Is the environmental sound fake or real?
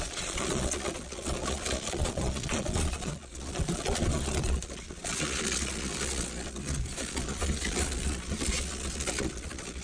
fake